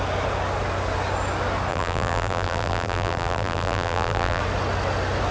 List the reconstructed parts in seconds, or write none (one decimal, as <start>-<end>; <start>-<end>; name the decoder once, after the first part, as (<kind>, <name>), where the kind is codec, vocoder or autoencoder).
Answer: 1.7-4.4 (vocoder, BigVGAN v2)